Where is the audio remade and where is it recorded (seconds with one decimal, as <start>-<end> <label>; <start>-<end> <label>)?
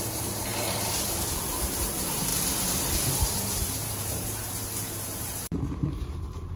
0.0-0.5 remade; 0.5-1.6 recorded; 1.6-2.3 remade; 2.3-3.2 recorded; 3.2-6.6 remade